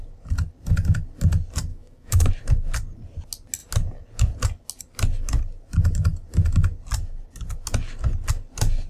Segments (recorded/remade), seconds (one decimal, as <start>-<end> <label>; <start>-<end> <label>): 0.0-1.7 recorded; 1.7-2.3 remade; 2.3-8.9 recorded